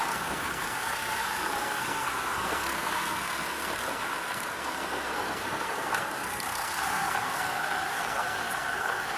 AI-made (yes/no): yes